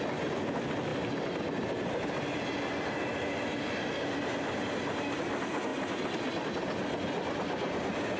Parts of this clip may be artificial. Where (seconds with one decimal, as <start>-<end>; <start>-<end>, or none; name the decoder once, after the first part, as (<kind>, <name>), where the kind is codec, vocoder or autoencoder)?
none